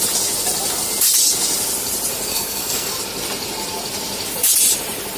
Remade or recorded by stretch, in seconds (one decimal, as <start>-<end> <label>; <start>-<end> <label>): 0.0-2.3 recorded; 2.3-3.0 remade; 3.0-5.2 recorded